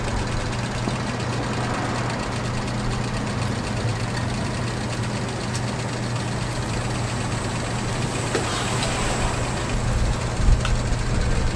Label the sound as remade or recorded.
recorded